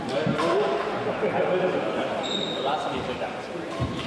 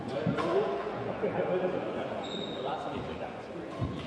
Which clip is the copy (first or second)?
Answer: second